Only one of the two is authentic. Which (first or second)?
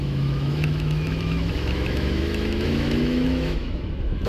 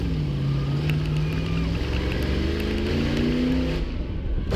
second